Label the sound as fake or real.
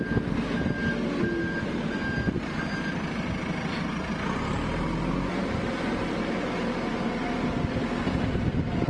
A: real